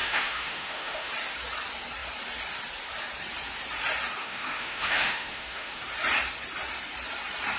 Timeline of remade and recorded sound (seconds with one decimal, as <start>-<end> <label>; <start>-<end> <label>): 0.0-1.1 remade; 1.1-4.2 recorded; 4.2-5.8 remade; 5.8-7.6 recorded